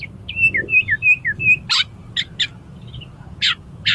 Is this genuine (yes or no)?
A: yes